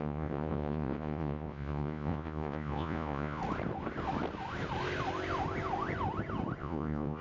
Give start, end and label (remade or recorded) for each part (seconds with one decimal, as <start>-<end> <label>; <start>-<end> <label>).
0.0-3.4 remade; 3.4-6.6 recorded; 6.6-7.2 remade